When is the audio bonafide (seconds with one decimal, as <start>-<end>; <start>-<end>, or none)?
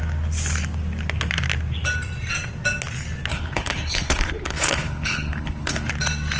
0.0-3.3; 5.9-6.4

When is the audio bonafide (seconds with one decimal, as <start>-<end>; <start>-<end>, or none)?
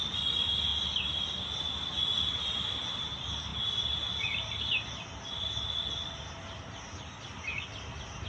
0.0-8.3